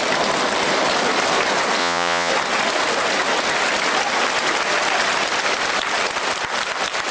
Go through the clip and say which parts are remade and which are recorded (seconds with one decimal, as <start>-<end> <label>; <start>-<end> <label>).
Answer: 0.0-1.8 recorded; 1.8-2.3 remade; 2.3-7.1 recorded